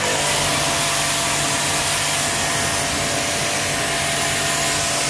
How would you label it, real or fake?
real